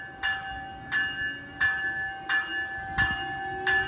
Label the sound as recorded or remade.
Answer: recorded